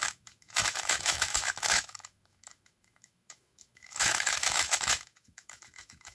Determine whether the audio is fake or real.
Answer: fake